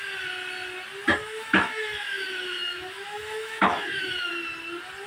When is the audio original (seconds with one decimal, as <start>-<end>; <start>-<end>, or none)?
0.0-1.2; 4.3-5.1